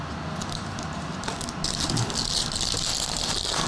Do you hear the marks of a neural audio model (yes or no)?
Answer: no